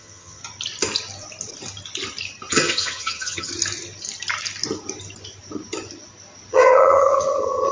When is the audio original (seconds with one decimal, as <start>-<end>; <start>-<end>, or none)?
0.4-2.5; 3.5-6.5